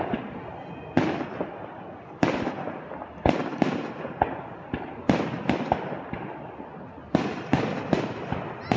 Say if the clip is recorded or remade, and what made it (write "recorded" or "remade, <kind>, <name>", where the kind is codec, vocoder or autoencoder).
recorded